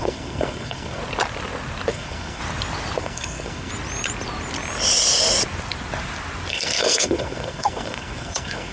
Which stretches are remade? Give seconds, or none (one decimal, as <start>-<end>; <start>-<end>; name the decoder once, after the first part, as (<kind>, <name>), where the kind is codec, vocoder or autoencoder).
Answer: 0.0-1.0 (codec, SNAC); 1.9-2.4; 3.0-3.7; 6.5-8.7